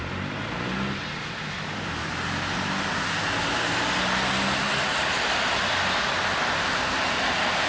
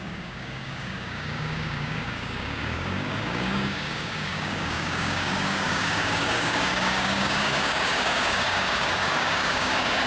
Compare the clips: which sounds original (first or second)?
first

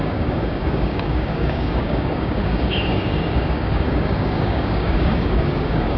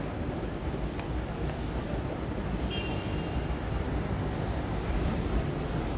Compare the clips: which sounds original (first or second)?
second